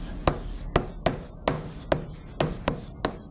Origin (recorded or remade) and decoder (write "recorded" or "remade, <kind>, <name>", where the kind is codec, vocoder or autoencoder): recorded